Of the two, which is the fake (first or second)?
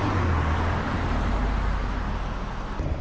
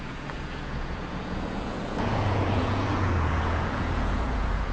second